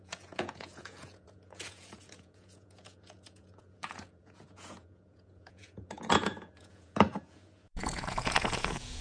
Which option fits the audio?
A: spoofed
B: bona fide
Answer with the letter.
A